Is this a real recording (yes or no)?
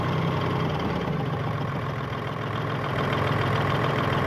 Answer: no